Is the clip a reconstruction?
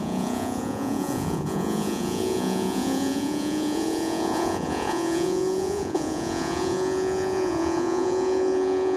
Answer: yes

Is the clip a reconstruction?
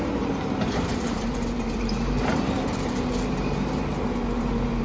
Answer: yes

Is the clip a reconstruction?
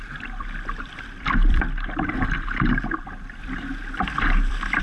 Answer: yes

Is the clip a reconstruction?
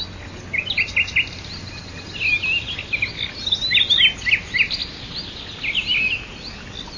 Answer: no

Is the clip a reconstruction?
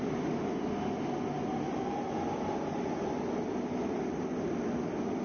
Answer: no